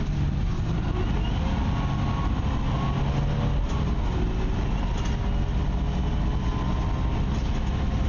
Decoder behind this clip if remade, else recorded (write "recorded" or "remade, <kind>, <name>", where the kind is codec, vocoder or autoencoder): recorded